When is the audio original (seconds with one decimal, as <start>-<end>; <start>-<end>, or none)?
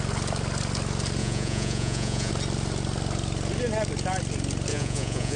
0.0-1.2; 2.3-4.7